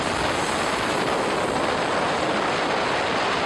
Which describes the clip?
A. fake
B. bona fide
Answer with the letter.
B